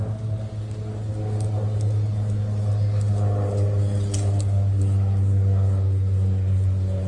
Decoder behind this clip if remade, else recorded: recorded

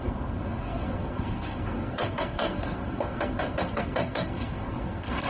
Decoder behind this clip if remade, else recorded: remade, codec, SNAC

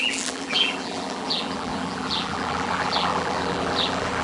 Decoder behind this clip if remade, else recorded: remade, vocoder, BigVGAN v2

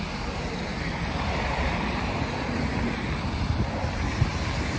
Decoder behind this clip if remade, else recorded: recorded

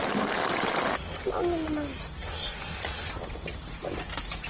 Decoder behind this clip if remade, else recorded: recorded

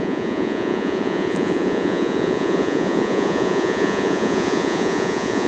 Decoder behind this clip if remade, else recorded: remade, vocoder, Vocos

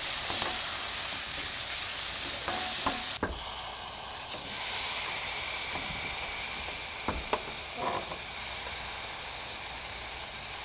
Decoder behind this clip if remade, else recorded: recorded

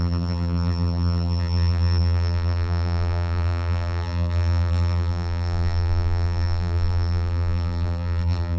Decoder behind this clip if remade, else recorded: remade, vocoder, BigVGAN v2